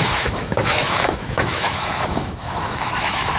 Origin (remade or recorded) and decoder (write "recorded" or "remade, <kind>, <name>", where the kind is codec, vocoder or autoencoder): remade, autoencoder, DAC-VAE